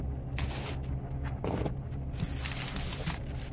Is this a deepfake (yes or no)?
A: no